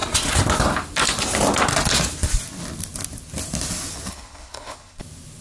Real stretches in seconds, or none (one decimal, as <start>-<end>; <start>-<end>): 0.0-4.1; 5.0-5.4